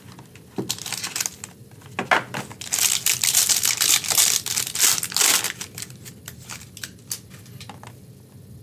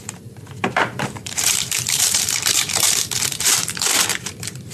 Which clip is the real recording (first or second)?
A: first